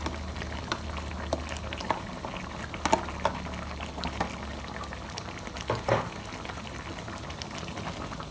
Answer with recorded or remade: recorded